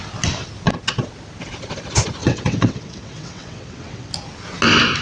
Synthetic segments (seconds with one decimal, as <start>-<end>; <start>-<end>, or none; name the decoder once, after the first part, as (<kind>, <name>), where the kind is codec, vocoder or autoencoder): 2.2-4.1 (vocoder, WaveNeXt)